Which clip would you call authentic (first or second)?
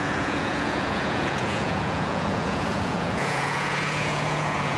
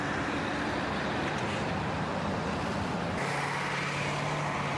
second